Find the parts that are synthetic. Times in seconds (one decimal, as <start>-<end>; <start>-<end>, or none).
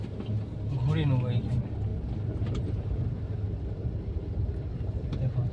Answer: 1.9-5.5